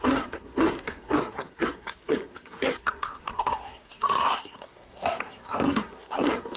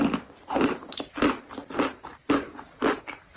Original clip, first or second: second